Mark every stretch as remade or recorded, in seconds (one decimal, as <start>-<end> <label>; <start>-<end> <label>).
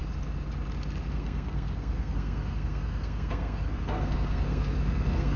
0.0-1.1 recorded; 1.1-5.4 remade